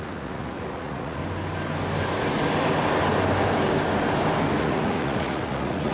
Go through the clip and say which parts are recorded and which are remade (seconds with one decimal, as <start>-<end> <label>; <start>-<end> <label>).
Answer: 0.0-1.2 remade; 1.2-4.6 recorded; 4.6-5.9 remade